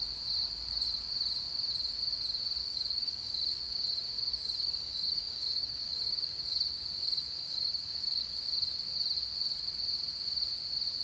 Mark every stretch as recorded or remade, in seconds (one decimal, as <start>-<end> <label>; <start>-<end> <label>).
0.0-2.6 recorded; 2.6-3.7 remade; 3.7-4.3 recorded; 4.3-8.3 remade; 8.3-11.0 recorded